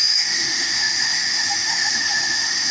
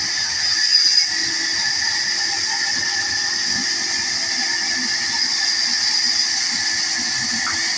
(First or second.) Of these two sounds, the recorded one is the second